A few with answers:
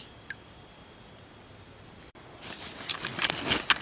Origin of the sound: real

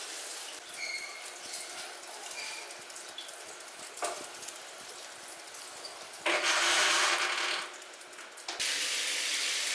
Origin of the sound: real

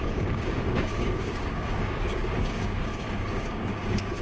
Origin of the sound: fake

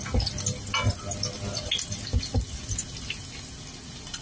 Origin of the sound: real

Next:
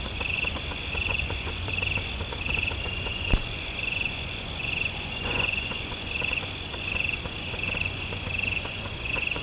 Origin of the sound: fake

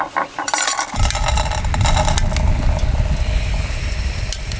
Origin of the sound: real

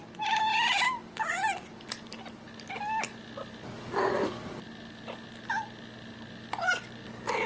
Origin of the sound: real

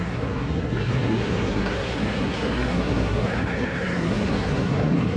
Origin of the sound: fake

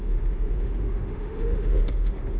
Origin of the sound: fake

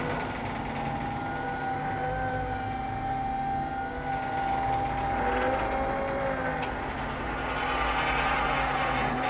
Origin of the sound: real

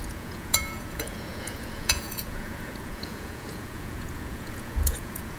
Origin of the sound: fake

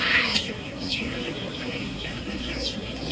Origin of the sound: fake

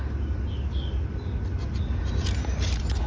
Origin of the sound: real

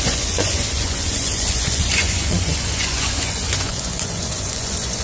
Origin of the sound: fake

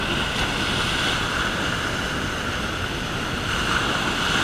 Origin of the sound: real